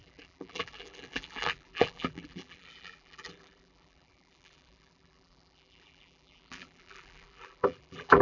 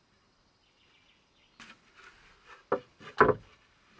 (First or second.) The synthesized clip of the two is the first